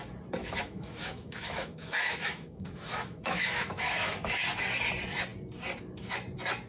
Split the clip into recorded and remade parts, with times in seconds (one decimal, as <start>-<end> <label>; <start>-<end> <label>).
0.0-0.4 recorded; 0.4-4.4 remade; 4.4-6.7 recorded